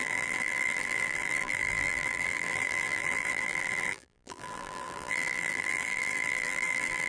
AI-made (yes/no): yes